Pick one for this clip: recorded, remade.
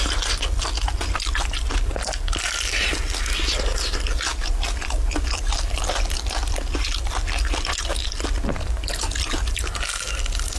recorded